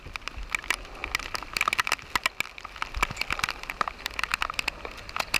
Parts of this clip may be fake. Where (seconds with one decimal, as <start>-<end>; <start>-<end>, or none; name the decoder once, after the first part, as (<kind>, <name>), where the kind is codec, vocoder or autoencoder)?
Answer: none